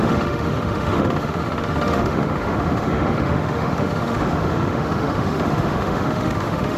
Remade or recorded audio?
remade